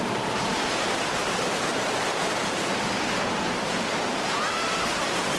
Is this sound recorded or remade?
remade